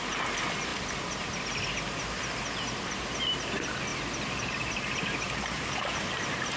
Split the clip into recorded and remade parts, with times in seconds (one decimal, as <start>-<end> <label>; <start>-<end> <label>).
0.0-6.6 recorded